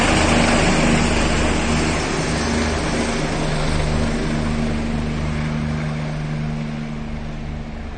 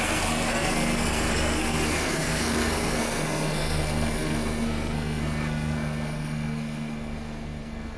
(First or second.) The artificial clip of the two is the second